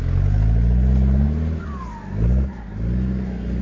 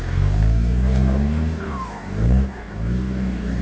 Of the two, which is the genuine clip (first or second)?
first